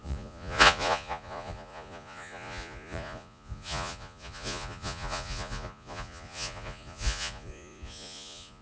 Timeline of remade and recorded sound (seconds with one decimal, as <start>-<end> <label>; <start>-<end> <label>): 0.0-8.6 remade